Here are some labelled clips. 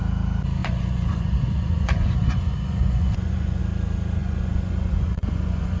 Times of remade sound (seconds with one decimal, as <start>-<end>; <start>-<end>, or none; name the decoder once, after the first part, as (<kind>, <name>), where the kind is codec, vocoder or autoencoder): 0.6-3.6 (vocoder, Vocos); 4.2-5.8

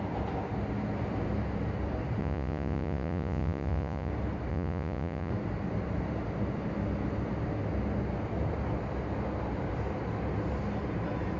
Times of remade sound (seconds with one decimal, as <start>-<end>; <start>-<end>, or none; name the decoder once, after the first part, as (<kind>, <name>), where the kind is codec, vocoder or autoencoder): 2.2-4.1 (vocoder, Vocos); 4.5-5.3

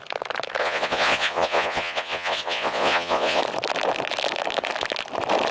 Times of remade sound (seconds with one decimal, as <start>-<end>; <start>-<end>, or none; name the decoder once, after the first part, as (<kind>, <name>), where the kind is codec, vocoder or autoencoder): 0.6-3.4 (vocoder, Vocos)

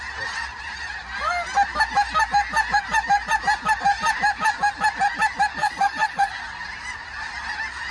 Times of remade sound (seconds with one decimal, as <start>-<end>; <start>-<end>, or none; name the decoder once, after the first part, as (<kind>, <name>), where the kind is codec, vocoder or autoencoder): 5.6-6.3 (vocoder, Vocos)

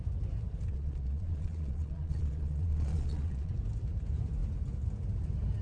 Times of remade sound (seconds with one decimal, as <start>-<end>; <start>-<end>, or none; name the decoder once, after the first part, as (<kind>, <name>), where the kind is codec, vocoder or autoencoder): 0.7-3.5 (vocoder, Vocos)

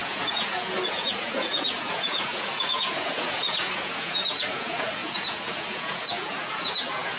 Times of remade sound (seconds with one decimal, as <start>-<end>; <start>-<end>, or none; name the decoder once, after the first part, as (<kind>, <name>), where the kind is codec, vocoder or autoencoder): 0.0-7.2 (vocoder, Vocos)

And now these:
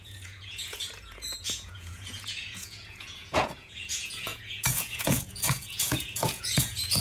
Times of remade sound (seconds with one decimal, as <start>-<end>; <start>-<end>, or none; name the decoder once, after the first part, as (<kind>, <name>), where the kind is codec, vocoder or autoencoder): 0.0-7.0 (vocoder, Vocos)

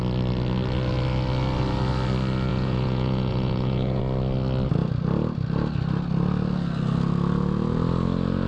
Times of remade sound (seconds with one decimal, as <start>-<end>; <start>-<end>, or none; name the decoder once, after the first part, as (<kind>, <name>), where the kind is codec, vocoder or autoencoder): 2.5-4.0 (vocoder, Vocos)